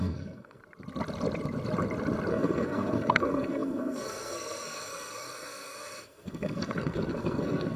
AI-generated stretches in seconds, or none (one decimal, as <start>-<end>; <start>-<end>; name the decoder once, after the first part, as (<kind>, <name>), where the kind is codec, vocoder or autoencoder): 0.0-0.6 (codec, SNAC); 2.3-7.8